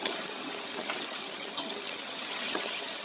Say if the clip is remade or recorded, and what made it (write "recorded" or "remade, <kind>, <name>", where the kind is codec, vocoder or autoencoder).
remade, vocoder, HiFi-GAN